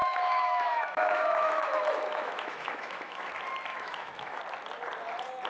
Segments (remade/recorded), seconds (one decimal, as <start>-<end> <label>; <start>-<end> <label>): 0.0-3.3 remade; 3.3-3.7 recorded; 3.7-4.4 remade; 4.4-5.5 recorded